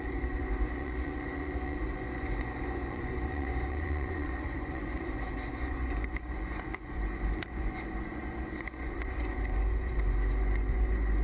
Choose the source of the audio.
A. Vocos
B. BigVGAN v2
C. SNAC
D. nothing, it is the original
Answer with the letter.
A